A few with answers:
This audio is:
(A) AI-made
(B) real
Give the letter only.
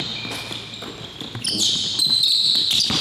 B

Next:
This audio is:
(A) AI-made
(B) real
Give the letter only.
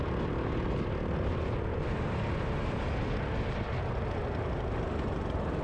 B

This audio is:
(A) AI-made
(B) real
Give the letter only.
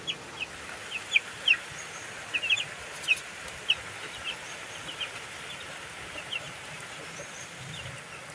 B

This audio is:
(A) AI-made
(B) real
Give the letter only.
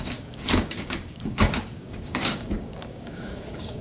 A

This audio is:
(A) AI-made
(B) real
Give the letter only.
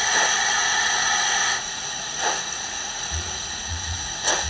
A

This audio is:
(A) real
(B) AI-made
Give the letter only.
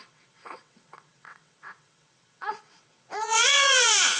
B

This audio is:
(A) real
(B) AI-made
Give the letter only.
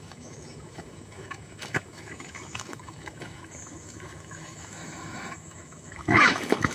B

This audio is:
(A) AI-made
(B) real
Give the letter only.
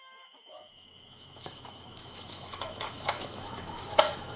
A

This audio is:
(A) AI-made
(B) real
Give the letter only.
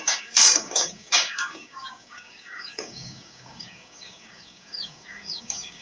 A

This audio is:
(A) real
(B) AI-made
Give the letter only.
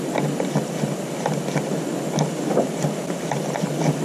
A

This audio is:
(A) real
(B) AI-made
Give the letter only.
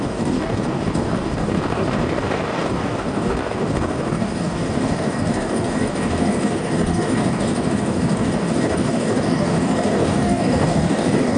B